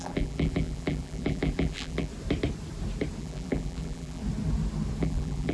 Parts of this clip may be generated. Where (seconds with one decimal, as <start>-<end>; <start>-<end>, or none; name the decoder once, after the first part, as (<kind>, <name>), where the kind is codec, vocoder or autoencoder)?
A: 0.0-2.1 (vocoder, BigVGAN v2); 3.2-4.2; 5.0-5.5